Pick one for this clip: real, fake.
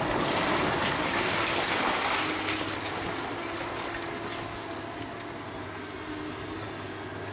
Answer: real